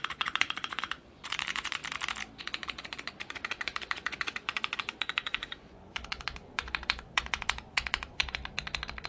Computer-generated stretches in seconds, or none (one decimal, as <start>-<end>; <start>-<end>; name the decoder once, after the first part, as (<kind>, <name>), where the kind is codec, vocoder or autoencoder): 0.0-1.8 (vocoder, Vocos); 2.4-8.4